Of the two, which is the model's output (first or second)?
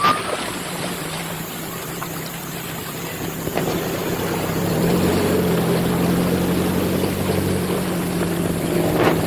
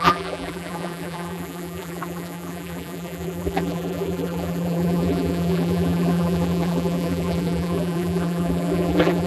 second